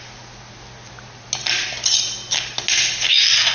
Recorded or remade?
recorded